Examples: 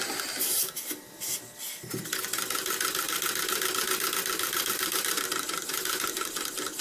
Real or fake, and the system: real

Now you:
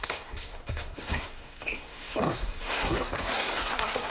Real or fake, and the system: fake, codec, SNAC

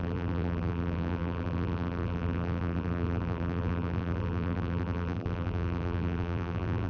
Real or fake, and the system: fake, vocoder, BigVGAN v2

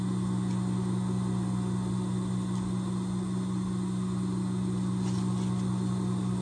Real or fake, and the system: real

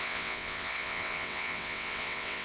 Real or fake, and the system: fake, vocoder, WaveNeXt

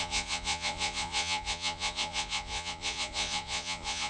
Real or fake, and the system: fake, vocoder, Vocos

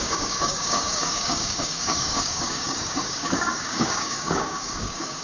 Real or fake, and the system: fake, codec, DAC